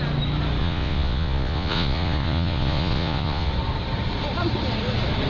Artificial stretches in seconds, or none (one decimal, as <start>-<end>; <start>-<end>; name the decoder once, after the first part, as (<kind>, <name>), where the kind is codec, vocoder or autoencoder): 0.6-3.5 (vocoder, Vocos)